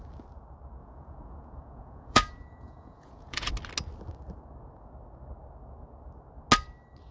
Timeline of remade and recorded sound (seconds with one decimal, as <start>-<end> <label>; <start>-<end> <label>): 0.0-0.8 recorded; 0.8-3.5 remade; 3.5-7.1 recorded